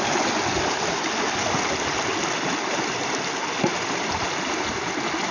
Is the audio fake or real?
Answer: real